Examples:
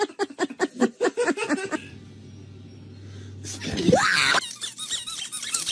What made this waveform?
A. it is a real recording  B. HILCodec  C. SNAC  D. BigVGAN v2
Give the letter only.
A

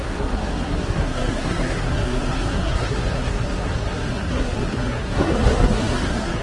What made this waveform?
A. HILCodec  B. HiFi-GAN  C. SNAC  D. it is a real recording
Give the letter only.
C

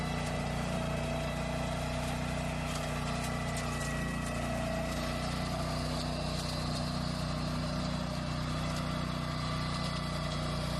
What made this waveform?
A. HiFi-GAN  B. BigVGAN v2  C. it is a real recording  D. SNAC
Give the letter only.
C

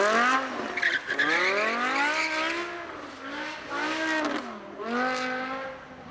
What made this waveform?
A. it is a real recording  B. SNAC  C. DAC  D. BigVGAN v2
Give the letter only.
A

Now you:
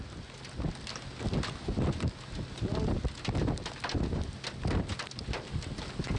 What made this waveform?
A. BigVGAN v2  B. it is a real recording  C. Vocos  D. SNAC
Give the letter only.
B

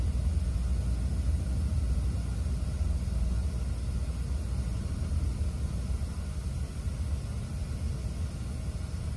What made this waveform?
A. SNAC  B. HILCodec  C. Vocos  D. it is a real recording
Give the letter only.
D